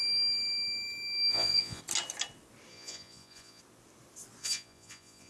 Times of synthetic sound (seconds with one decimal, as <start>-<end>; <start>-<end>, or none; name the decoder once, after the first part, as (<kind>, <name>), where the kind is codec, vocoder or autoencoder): 1.3-1.8 (vocoder, Vocos); 2.7-3.6; 4.4-5.3